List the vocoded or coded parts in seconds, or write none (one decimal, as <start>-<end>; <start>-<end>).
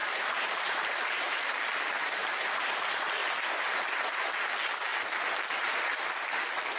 0.0-1.4; 2.2-2.8; 4.9-5.8